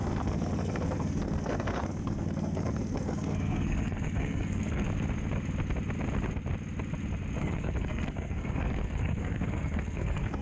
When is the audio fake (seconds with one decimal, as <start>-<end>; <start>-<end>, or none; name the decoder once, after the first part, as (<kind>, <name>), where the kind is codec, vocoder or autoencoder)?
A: 0.0-4.9 (codec, SNAC); 7.4-10.4